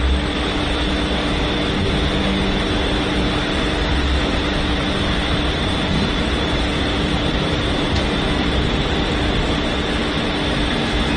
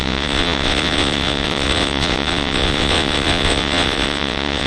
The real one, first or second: first